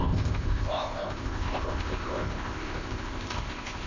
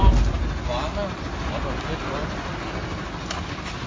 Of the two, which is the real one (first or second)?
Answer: second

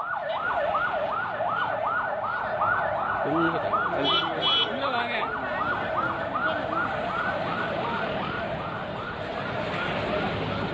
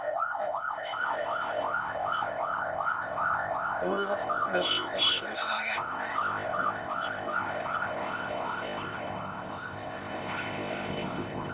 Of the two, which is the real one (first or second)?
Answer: first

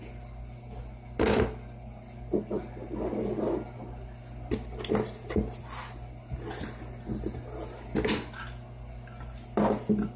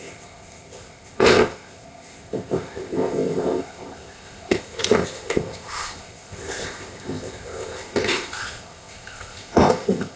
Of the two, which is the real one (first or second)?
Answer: first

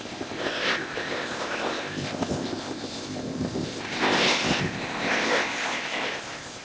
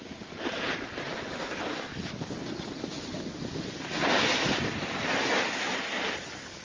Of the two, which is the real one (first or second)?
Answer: second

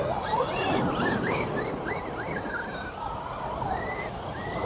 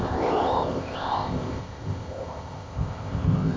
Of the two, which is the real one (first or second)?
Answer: first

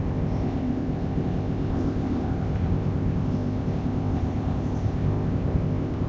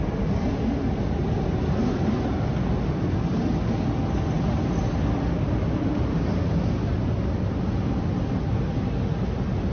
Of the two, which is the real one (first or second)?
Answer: second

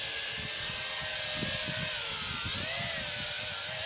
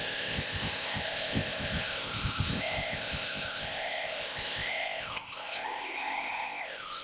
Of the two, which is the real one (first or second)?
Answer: first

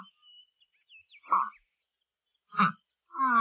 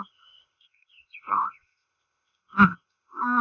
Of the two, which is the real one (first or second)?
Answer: first